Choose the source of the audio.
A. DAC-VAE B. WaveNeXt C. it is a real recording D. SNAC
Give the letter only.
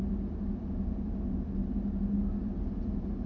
C